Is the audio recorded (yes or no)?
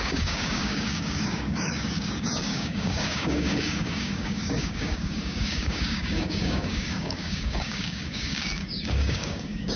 no